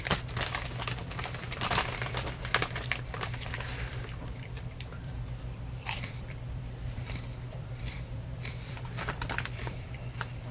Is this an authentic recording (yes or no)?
no